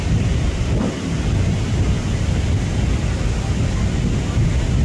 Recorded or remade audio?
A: recorded